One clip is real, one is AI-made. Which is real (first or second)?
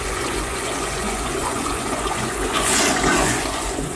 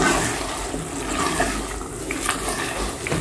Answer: second